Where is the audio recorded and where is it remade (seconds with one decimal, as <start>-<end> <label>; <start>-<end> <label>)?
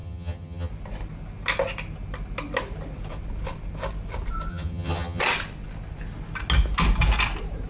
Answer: 0.0-0.7 remade; 0.7-4.5 recorded; 4.5-5.2 remade; 5.2-7.7 recorded